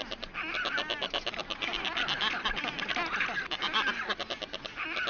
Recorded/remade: recorded